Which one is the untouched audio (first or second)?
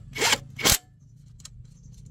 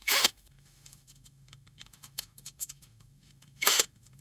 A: first